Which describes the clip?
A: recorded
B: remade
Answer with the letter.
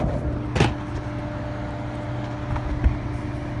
A